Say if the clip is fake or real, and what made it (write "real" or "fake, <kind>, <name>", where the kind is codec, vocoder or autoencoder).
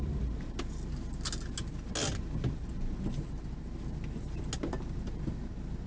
real